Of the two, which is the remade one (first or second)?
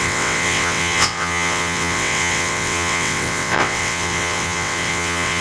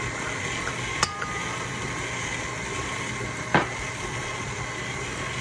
first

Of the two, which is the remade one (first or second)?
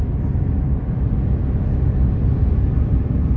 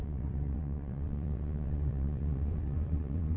second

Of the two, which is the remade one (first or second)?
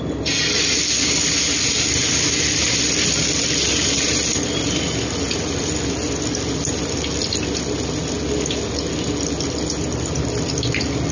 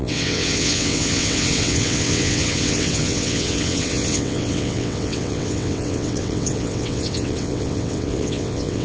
second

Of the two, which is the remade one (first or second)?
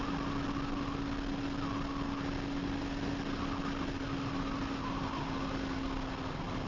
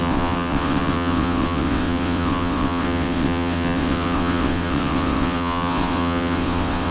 second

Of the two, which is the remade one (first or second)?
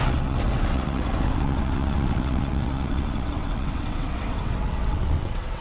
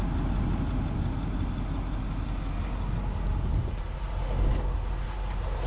first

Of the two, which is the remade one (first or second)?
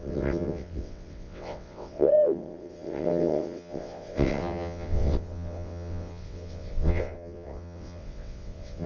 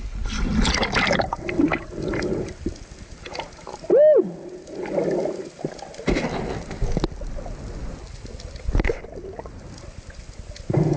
first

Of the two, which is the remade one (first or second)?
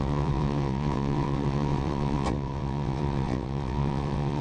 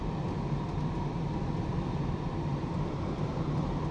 first